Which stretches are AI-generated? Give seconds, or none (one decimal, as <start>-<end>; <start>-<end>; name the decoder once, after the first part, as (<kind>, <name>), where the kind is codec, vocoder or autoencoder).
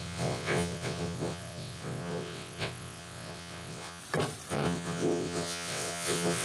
0.0-4.0 (vocoder, WaveNeXt); 4.5-6.4